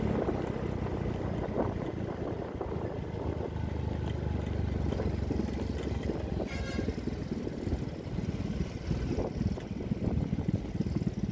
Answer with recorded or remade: recorded